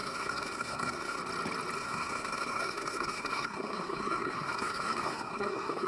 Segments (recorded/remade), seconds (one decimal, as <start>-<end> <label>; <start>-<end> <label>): 0.0-1.2 remade; 1.2-1.8 recorded; 1.8-5.9 remade